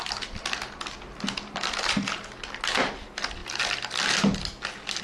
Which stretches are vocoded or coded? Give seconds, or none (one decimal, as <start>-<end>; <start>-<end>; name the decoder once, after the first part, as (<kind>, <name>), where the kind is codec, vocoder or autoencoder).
none